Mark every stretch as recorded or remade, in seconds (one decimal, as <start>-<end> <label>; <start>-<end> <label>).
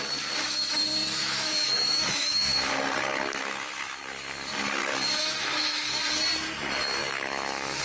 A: 0.0-1.2 recorded; 1.2-2.7 remade; 2.7-3.4 recorded; 3.4-4.0 remade; 4.0-4.8 recorded; 4.8-6.0 remade; 6.0-7.0 recorded; 7.0-7.8 remade